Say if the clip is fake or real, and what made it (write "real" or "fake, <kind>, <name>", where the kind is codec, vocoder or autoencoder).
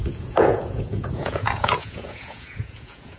fake, vocoder, Vocos